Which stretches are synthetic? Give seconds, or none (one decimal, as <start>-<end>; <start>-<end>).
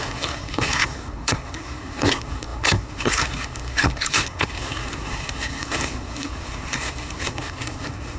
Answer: 0.0-8.2